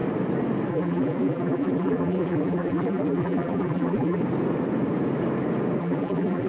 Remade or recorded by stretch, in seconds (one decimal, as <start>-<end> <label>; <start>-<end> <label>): 0.0-0.7 recorded; 0.7-4.2 remade; 4.2-5.8 recorded; 5.8-6.5 remade